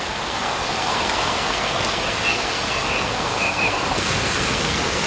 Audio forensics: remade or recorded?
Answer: remade